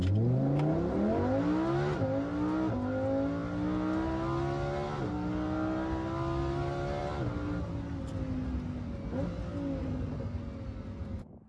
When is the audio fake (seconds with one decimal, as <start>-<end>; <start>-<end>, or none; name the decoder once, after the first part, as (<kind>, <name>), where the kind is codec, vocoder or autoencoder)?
none